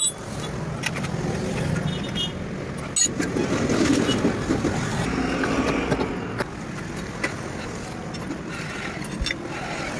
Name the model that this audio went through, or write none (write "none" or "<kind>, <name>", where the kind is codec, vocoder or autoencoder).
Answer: none